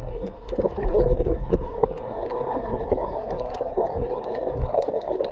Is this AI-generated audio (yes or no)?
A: yes